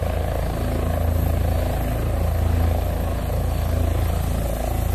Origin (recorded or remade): recorded